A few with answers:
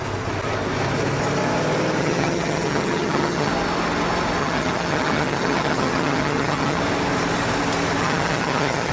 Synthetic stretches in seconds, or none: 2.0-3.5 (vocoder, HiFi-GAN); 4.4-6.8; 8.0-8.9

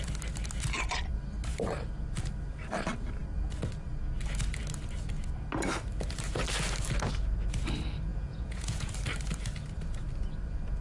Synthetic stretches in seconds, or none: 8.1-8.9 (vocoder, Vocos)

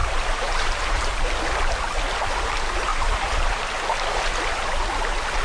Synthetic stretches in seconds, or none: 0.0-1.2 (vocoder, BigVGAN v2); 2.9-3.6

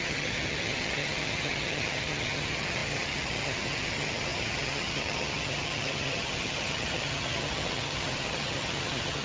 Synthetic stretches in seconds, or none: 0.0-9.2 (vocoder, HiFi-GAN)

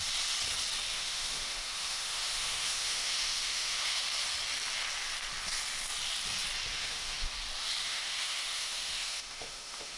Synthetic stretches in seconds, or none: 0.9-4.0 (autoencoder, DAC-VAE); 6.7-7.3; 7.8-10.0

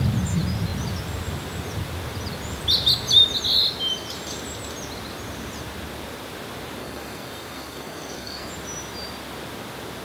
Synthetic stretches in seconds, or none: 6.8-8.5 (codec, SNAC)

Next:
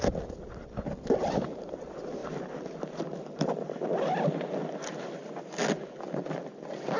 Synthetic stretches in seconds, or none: none